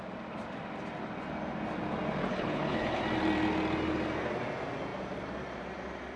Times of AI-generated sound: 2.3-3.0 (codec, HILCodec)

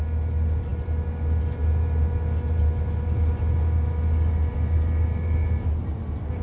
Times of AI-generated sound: none